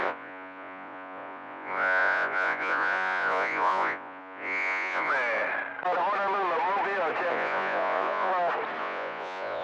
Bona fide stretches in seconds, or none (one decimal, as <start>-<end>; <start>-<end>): 5.1-7.3; 8.3-8.8